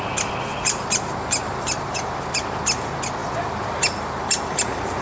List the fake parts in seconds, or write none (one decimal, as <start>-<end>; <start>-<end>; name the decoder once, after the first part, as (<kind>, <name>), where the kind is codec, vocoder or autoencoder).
0.5-2.8 (vocoder, BigVGAN v2); 3.2-5.0